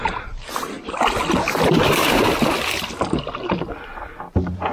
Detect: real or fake real